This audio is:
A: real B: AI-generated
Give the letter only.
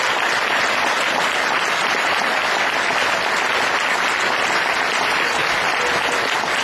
A